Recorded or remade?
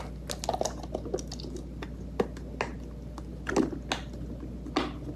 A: recorded